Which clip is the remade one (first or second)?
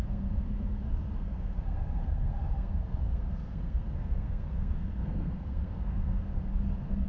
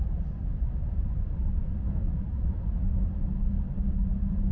first